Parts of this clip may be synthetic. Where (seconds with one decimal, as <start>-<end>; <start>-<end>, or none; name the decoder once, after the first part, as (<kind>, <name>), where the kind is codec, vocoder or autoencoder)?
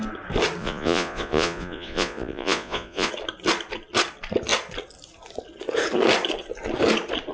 0.6-3.1 (vocoder, Vocos)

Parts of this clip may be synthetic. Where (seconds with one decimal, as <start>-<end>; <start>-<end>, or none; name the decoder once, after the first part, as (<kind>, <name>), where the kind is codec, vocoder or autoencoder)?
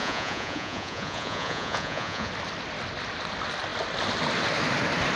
0.0-2.3 (vocoder, Vocos)